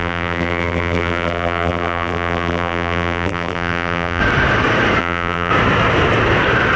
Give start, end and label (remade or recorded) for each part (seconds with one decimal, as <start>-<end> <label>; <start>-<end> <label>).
0.0-4.2 remade; 4.2-5.0 recorded; 5.0-5.5 remade; 5.5-6.8 recorded